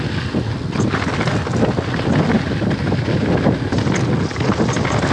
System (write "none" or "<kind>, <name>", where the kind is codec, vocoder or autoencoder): none